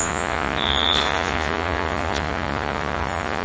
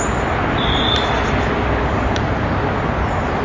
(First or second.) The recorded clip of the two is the second